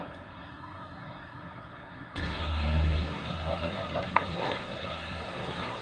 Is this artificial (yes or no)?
yes